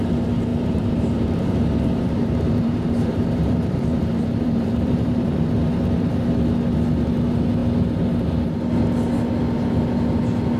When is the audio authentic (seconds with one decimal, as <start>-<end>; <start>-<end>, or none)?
0.0-0.5; 5.5-10.6

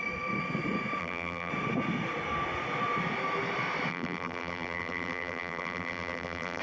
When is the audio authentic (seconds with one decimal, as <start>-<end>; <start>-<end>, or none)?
0.0-1.0; 1.5-3.9

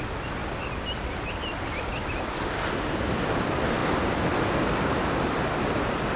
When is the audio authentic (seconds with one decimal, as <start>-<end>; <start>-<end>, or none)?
0.0-6.2

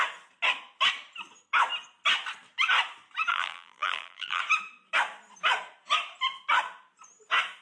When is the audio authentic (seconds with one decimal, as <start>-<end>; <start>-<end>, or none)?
0.0-3.3; 4.4-7.6

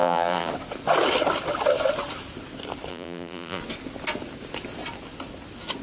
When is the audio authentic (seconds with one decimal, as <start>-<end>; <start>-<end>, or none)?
0.5-2.9; 3.6-5.8

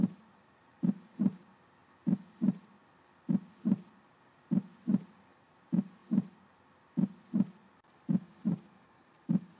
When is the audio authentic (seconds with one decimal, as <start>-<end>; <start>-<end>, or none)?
1.8-2.4; 2.8-5.4; 6.0-8.6

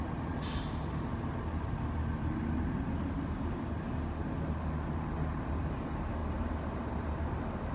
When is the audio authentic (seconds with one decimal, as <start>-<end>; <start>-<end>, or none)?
0.0-6.2; 6.8-7.7